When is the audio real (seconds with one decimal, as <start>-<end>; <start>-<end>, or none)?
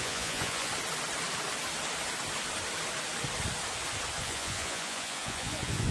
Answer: 0.7-4.2